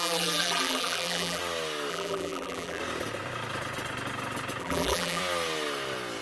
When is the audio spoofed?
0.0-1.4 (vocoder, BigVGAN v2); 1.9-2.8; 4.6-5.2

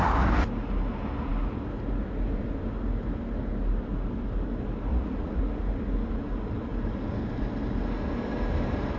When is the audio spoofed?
4.9-5.4 (vocoder, Vocos)

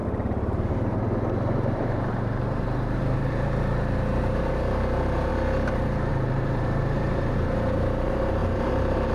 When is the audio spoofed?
0.7-5.3 (vocoder, BigVGAN v2); 6.1-9.1

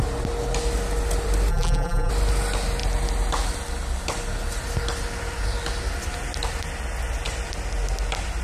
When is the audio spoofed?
1.5-2.1 (vocoder, BigVGAN v2)